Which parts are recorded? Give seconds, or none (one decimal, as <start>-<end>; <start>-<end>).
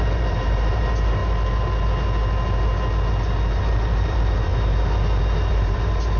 1.2-3.6; 4.5-5.5